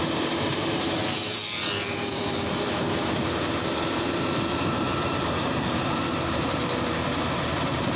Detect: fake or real fake